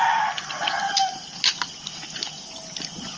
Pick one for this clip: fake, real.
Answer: real